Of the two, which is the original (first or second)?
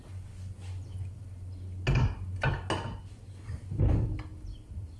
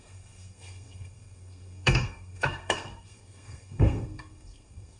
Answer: first